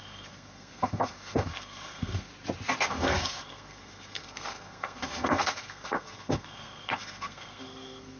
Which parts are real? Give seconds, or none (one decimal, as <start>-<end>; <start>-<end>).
2.3-2.9